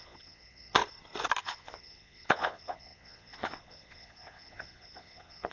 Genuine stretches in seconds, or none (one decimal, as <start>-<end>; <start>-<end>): 0.8-1.4